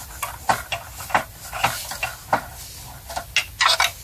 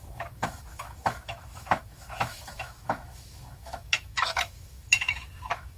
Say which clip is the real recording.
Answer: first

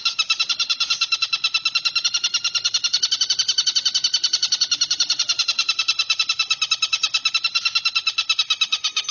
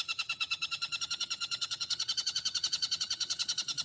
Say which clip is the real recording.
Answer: first